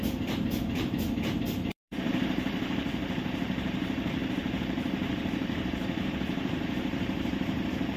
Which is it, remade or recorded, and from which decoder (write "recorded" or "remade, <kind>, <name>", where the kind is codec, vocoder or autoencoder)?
remade, vocoder, BigVGAN v2